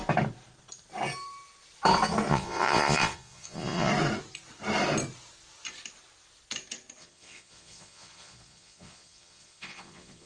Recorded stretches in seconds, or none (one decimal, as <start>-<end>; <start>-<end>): 0.0-2.3; 3.9-7.0